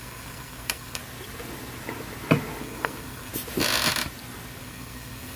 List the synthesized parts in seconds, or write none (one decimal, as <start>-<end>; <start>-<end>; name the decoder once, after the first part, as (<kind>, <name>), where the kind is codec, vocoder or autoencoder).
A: 0.0-1.0 (codec, SNAC); 2.6-3.3; 4.6-5.4